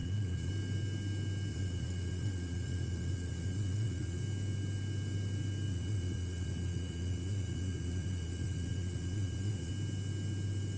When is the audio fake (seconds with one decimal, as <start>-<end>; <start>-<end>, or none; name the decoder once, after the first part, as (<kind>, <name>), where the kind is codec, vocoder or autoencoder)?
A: 0.0-0.5 (vocoder, Vocos); 1.5-4.2; 5.7-9.7